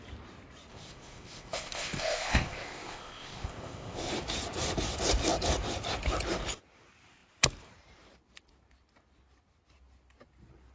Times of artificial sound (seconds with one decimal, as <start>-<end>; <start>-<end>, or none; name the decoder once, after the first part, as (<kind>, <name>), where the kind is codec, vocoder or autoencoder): 0.7-4.1 (codec, ZipCodec)